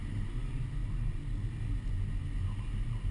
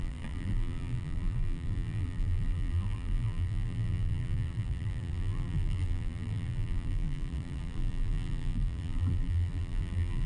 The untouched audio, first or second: first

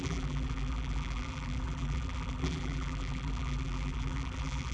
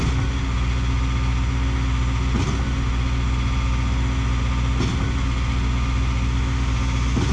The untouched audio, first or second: second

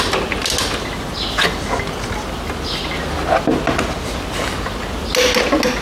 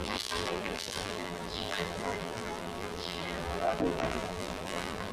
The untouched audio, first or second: first